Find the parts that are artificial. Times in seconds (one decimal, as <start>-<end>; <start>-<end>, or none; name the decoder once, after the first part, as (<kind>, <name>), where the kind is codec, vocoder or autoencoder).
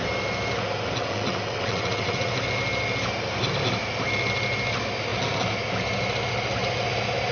1.0-2.3 (vocoder, WaveNeXt)